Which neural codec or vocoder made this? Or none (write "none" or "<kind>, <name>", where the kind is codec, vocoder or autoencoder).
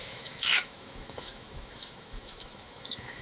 autoencoder, DAC-VAE